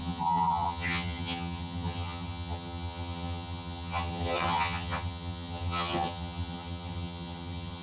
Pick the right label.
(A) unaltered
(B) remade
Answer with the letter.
B